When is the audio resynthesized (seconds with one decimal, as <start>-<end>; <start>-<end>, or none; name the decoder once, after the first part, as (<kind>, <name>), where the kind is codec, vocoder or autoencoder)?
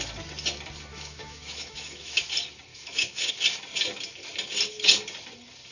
0.9-2.2 (autoencoder, DAC-VAE); 2.7-3.3